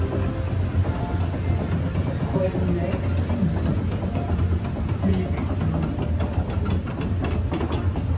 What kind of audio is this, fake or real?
real